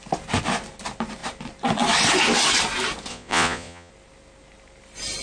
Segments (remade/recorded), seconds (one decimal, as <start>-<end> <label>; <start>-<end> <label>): 0.0-3.1 recorded; 3.1-3.9 remade; 3.9-5.2 recorded